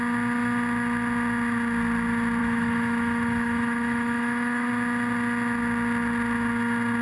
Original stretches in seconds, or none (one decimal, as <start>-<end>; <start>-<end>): 0.0-2.4; 4.7-7.0